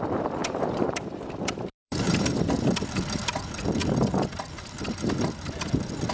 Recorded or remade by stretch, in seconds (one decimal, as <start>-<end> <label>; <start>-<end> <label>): 0.0-0.4 recorded; 0.4-2.5 remade; 2.5-6.1 recorded